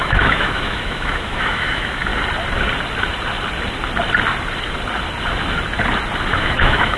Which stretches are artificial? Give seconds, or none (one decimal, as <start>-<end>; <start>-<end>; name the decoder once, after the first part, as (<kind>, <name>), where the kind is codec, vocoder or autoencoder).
0.0-2.1 (autoencoder, DAC-VAE); 6.3-7.0